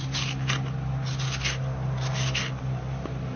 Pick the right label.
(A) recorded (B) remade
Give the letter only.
A